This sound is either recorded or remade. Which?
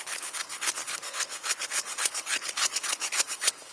remade